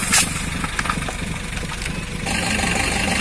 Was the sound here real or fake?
real